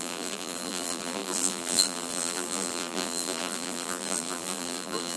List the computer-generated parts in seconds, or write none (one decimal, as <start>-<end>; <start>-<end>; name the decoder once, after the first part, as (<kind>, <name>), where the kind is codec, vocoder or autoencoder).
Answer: 0.0-5.2 (vocoder, BigVGAN v2)